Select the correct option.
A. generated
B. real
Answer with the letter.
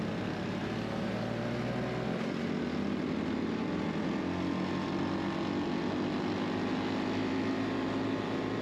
B